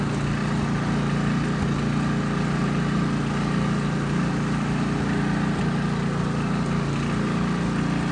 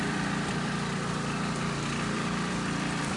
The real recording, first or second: first